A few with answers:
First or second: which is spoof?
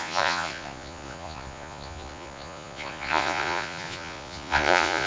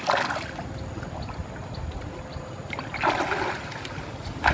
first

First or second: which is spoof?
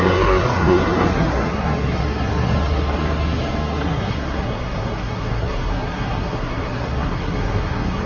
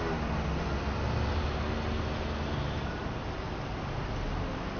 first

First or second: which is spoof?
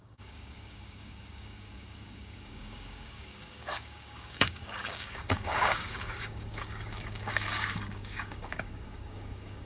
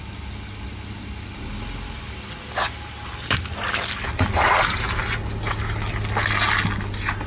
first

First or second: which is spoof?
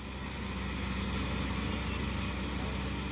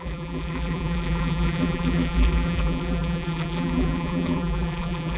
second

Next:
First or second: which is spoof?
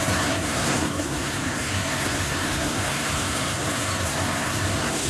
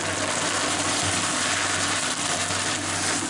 first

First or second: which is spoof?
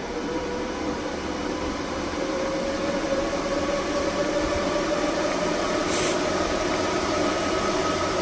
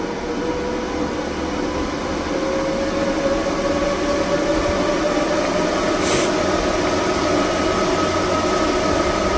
first